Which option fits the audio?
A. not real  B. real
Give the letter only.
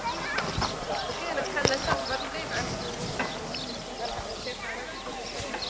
B